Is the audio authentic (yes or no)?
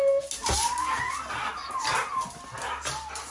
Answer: yes